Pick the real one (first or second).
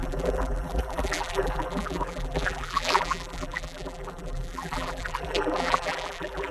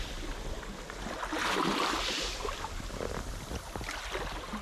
second